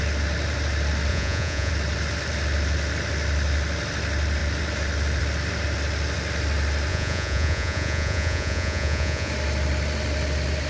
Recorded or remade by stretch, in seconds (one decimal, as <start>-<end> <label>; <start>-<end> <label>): 0.0-1.1 recorded; 1.1-1.7 remade; 1.7-6.9 recorded; 6.9-9.3 remade; 9.3-10.7 recorded